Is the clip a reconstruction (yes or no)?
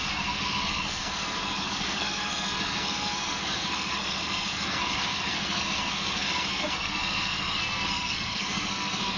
yes